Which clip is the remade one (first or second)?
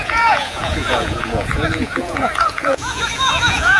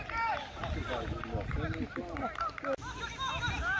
first